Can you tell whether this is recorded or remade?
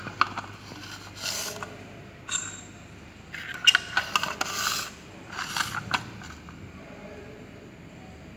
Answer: recorded